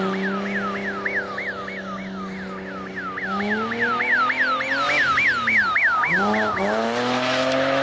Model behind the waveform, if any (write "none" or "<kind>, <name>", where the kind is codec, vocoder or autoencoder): none